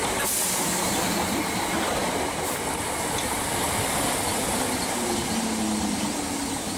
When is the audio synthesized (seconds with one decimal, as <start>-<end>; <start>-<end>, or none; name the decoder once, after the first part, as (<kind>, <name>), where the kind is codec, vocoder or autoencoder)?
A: none